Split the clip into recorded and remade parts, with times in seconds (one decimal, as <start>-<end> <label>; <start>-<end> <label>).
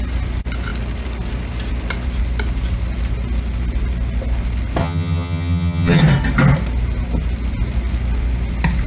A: 0.0-4.8 recorded; 4.8-6.0 remade; 6.0-8.9 recorded